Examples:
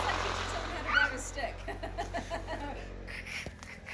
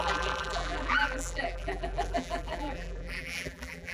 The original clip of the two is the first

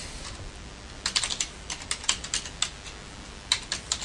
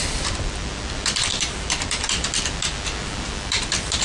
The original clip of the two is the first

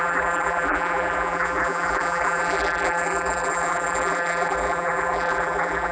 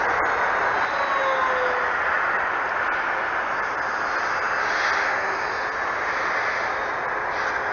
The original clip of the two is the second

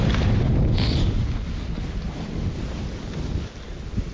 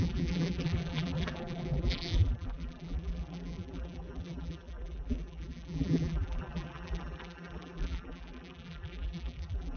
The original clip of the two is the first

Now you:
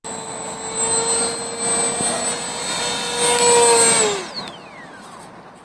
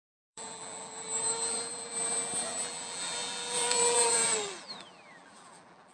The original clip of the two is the first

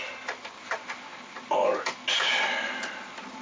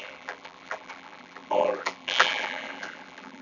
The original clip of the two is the first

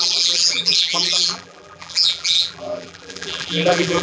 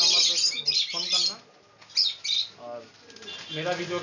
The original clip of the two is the second